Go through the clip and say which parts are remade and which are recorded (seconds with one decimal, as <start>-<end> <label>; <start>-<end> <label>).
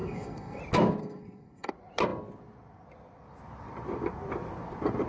0.0-0.6 remade; 0.6-1.0 recorded; 1.0-1.7 remade; 1.7-5.1 recorded